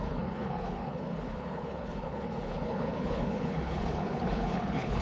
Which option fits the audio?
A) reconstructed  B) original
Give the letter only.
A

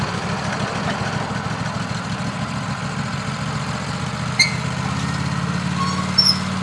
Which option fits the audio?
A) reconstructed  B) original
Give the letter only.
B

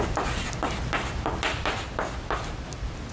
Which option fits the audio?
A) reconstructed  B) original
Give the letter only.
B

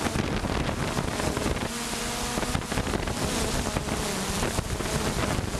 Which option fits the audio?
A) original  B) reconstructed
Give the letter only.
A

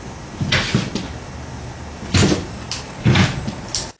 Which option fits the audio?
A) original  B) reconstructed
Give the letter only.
A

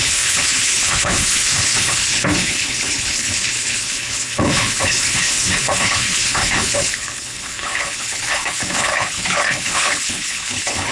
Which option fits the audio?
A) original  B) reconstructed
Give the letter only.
B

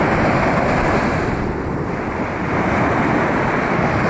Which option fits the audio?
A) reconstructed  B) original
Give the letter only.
B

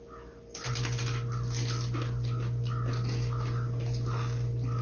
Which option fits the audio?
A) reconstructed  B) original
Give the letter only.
B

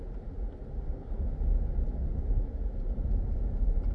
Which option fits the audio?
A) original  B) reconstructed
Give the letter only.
A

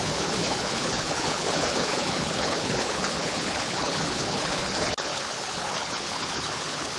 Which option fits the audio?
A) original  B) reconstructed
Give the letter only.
B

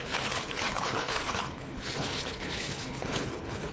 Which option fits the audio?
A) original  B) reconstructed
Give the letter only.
B